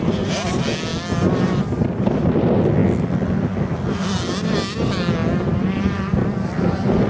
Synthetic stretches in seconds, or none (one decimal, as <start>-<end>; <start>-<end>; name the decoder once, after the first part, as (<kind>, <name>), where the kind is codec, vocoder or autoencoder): none